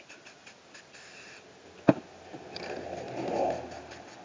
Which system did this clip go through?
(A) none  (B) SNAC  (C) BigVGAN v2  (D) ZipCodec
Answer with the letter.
A